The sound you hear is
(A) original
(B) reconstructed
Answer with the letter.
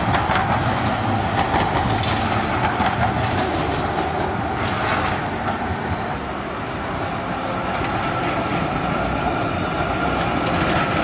A